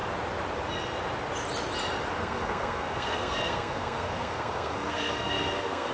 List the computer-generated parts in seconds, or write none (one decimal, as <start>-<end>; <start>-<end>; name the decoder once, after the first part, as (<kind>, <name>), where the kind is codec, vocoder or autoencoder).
2.2-5.9 (codec, SNAC)